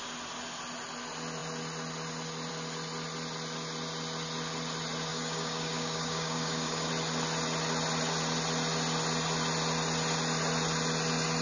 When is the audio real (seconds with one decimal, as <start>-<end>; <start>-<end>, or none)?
0.0-5.1; 6.9-11.4